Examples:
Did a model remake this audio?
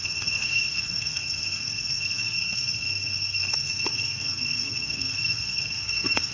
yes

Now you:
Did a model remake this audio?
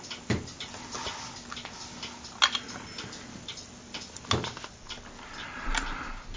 no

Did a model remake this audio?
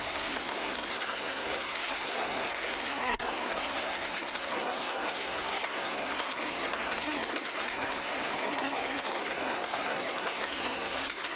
yes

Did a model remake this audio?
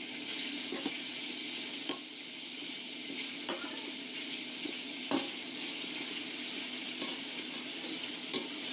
no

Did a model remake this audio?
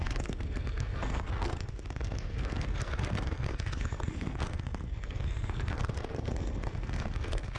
yes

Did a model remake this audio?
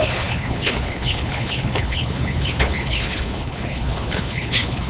yes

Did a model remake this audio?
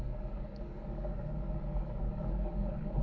yes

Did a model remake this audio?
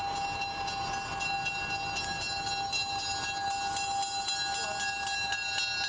no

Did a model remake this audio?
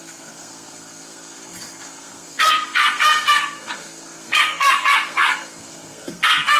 yes